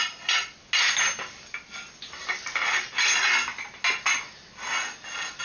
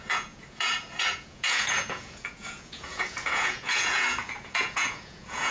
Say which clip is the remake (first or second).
second